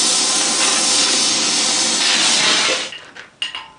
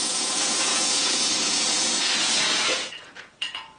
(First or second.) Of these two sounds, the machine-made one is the second